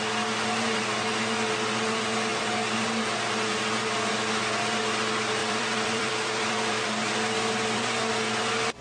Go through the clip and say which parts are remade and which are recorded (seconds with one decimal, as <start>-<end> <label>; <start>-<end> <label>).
0.0-5.4 recorded; 5.4-7.1 remade; 7.1-8.8 recorded